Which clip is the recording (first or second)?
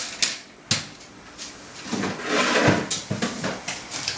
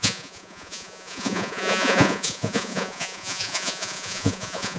first